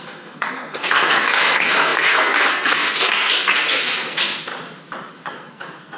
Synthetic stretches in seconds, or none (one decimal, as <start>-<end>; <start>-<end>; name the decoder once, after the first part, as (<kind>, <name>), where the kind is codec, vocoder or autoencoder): 0.0-4.5 (codec, SNAC); 5.1-6.0